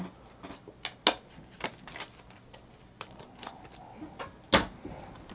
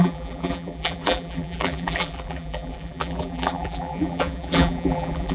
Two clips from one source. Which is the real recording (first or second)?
first